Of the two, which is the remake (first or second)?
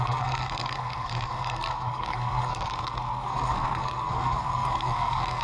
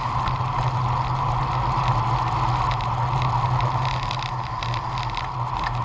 first